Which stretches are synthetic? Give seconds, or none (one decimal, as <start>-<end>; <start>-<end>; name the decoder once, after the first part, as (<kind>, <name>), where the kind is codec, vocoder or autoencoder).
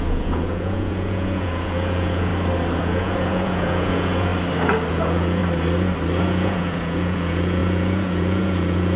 0.0-2.3 (vocoder, Vocos); 2.8-4.3; 4.9-5.4; 6.2-9.0